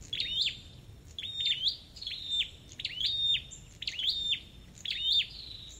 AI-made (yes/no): no